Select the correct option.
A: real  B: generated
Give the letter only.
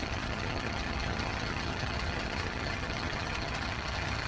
B